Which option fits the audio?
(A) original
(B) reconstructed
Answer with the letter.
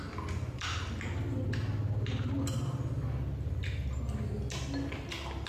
A